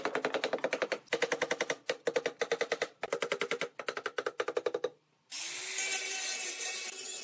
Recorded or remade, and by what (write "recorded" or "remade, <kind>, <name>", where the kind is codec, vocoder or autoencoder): recorded